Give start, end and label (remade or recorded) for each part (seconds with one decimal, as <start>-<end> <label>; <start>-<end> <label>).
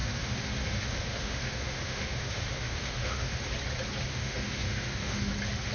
0.0-3.4 remade; 3.4-4.1 recorded; 4.1-5.3 remade; 5.3-5.7 recorded